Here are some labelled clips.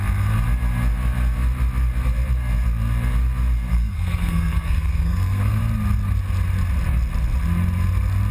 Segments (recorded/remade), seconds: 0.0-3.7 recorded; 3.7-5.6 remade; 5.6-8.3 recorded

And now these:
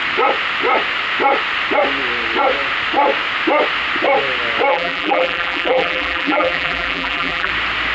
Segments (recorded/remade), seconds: 0.0-4.7 recorded; 4.7-7.5 remade; 7.5-7.9 recorded

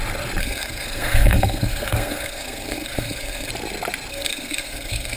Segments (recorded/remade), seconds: 0.0-0.4 recorded; 0.4-3.5 remade; 3.5-4.1 recorded; 4.1-5.2 remade

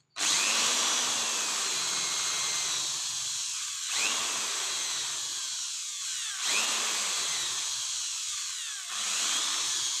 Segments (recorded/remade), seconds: 0.0-10.0 recorded

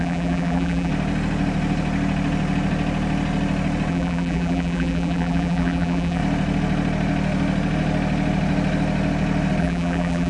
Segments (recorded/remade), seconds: 0.0-0.9 remade; 0.9-3.9 recorded; 3.9-6.2 remade; 6.2-9.6 recorded; 9.6-10.3 remade

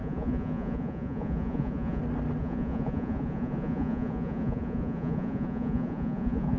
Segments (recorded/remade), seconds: 0.0-2.0 remade; 2.0-2.4 recorded; 2.4-6.6 remade

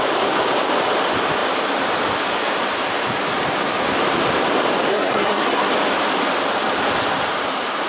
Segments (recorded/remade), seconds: 0.0-4.9 recorded; 4.9-5.7 remade; 5.7-7.9 recorded